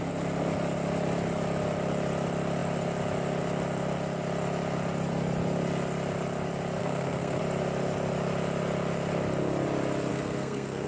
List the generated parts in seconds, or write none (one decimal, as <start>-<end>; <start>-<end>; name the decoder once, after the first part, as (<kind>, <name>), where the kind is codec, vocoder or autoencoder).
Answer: 6.8-7.4 (codec, SNAC); 10.1-10.9